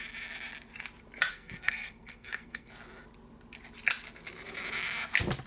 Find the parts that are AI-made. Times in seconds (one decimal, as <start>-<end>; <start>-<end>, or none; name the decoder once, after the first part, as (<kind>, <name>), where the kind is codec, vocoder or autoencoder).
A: 1.3-2.7 (codec, SNAC)